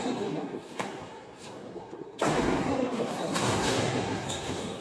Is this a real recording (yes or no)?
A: no